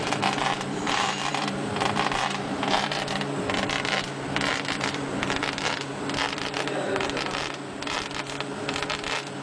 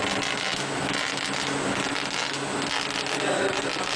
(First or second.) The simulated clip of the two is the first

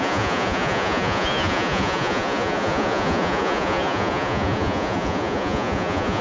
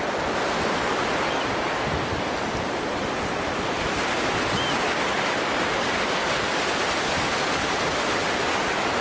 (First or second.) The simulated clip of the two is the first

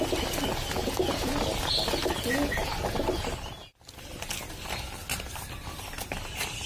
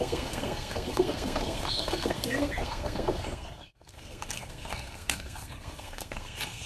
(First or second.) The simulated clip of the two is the second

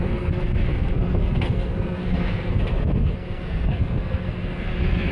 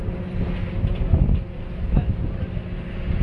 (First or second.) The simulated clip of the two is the first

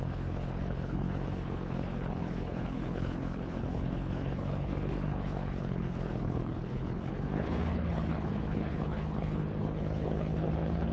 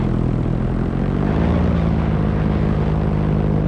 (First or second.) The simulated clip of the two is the first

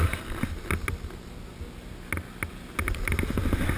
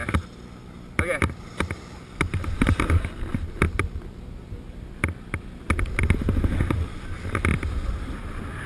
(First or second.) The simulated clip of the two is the second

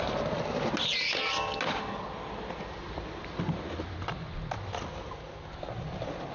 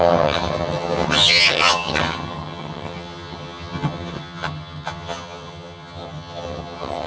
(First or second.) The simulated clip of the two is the second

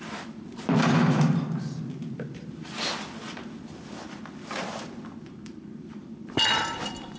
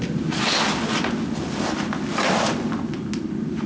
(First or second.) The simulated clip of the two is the first